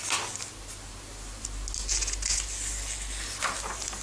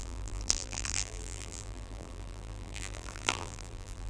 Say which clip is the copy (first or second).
second